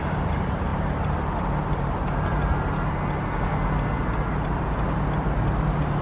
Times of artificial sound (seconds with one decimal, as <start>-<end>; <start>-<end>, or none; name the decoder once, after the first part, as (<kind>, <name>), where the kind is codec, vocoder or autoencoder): none